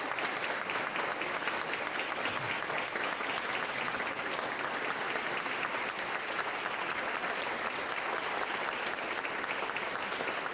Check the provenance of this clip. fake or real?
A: real